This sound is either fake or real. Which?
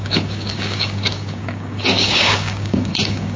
fake